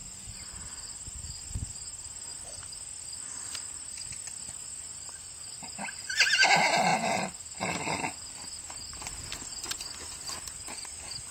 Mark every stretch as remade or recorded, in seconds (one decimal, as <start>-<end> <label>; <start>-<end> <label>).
0.0-11.3 recorded